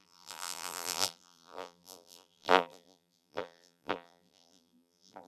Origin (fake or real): fake